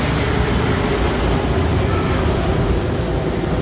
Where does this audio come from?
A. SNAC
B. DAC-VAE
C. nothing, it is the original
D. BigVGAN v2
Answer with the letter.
C